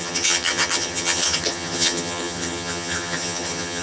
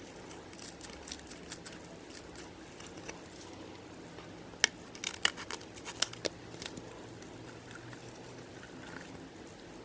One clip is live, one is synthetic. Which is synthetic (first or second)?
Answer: first